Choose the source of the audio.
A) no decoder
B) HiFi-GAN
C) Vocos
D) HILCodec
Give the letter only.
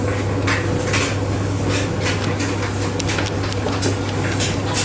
A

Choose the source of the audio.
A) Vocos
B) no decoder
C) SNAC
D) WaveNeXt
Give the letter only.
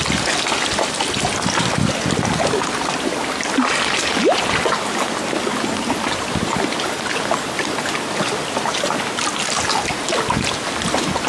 B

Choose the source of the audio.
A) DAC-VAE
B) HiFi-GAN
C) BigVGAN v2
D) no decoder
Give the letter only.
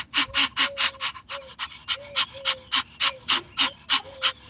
D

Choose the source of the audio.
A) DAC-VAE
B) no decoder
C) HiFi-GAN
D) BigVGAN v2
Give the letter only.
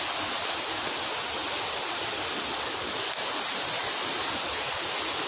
B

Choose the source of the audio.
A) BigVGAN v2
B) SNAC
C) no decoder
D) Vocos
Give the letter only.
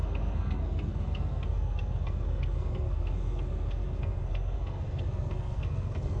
B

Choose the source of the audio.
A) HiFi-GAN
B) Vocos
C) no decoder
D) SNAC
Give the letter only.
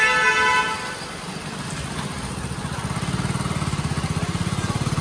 C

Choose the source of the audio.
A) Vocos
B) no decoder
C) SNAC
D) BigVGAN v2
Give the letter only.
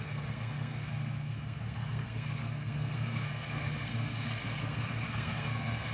C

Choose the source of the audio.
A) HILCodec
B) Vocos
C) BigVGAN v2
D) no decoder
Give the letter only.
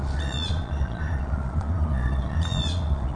B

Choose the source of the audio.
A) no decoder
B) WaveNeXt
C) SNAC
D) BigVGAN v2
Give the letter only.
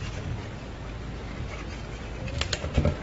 D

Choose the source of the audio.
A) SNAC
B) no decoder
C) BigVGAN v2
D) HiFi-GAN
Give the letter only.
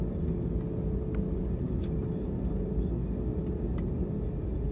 B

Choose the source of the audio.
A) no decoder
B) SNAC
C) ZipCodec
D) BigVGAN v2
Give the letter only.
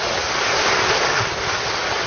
A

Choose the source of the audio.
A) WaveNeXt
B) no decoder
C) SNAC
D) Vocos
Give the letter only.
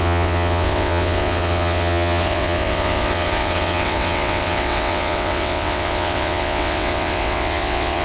A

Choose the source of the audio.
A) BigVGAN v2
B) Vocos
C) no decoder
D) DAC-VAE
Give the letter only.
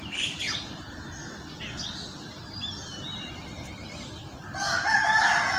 C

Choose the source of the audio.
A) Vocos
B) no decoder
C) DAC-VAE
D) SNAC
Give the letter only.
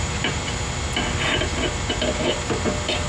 B